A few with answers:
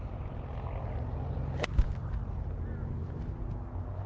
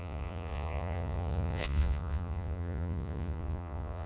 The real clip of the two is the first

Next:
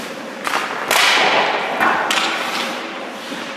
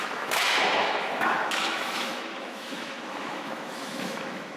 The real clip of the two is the first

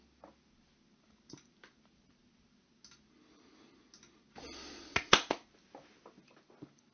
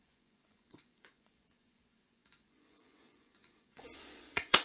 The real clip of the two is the first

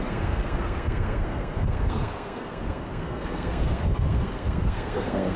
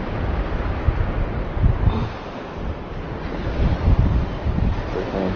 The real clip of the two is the second